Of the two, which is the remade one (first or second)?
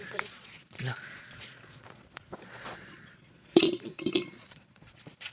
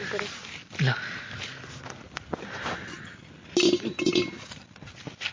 first